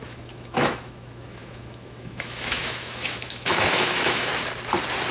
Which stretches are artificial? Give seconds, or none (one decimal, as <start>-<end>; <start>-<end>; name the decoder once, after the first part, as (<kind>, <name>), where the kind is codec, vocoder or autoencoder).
0.0-4.3 (autoencoder, DAC-VAE)